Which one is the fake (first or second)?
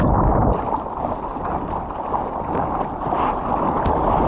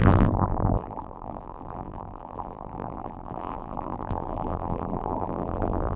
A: second